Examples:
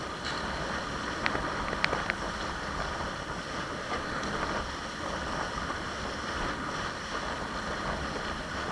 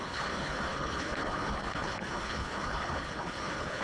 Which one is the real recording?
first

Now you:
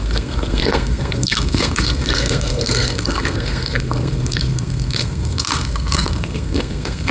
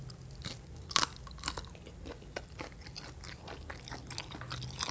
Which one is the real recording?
second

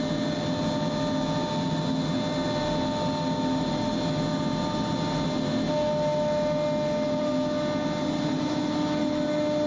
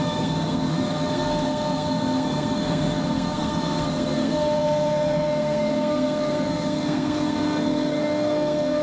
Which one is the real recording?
first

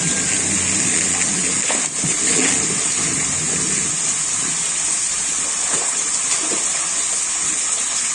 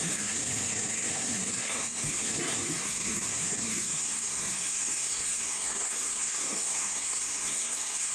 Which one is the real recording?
first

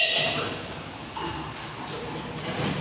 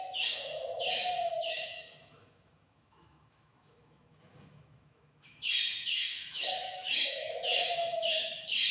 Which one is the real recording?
first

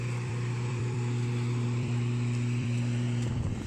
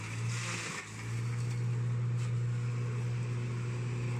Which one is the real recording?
second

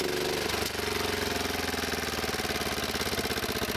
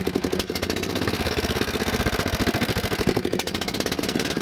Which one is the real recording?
first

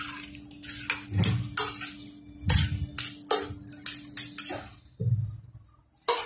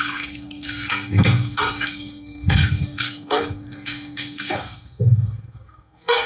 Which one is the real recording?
first